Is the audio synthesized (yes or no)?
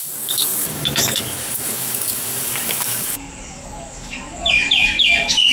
yes